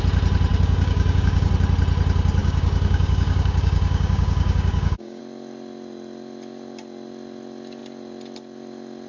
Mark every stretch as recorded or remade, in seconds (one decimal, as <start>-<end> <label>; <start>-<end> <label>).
0.0-0.5 recorded; 0.5-1.5 remade; 1.5-2.4 recorded; 2.4-5.2 remade; 5.2-9.1 recorded